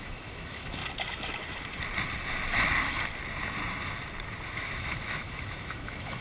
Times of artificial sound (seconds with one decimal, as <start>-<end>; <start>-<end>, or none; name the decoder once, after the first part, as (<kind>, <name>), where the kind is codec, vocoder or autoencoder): 0.0-0.8 (autoencoder, DAC-VAE); 4.5-6.2